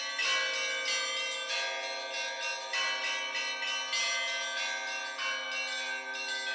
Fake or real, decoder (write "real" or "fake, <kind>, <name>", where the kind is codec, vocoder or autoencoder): real